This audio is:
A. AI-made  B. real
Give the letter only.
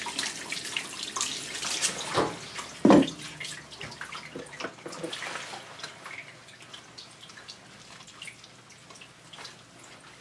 B